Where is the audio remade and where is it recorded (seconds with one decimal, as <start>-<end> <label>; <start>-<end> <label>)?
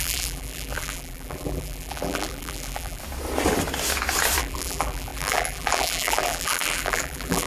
0.0-3.0 remade; 3.0-4.4 recorded; 4.4-7.5 remade